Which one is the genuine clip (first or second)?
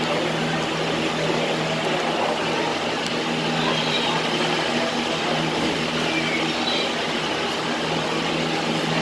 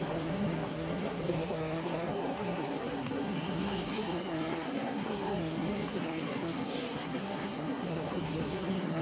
first